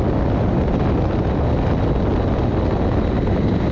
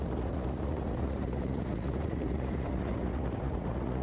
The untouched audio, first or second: first